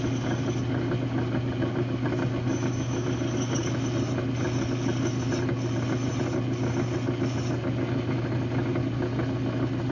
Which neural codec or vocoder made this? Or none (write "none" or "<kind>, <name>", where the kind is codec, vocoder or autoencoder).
none